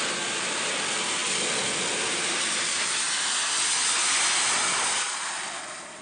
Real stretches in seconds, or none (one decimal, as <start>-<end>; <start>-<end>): 0.0-6.0